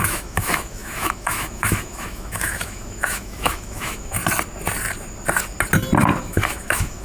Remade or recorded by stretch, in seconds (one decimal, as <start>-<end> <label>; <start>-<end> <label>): 0.0-4.2 remade; 4.2-6.2 recorded; 6.2-7.0 remade